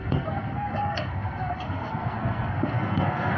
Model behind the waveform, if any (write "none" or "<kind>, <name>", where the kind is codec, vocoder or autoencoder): codec, SNAC